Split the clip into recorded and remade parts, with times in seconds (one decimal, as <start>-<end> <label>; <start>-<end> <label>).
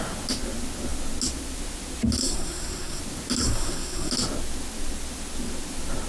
0.0-2.2 recorded; 2.2-3.0 remade; 3.0-3.4 recorded; 3.4-4.1 remade; 4.1-6.1 recorded